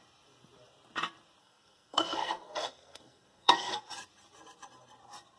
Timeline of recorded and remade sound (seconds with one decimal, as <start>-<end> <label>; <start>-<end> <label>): 0.0-1.4 recorded; 1.4-3.8 remade; 3.8-5.4 recorded